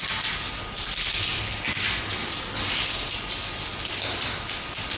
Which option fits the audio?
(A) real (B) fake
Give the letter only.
A